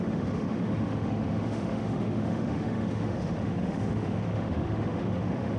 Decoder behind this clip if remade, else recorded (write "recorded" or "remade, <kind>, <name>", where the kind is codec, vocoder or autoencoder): remade, autoencoder, DAC-VAE